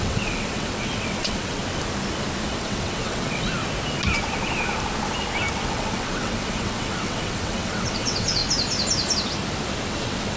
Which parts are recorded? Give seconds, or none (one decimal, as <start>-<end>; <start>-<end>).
1.6-2.5; 3.6-5.5; 8.4-9.9